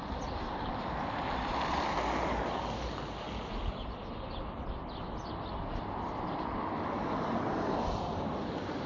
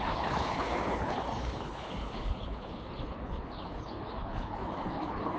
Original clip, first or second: first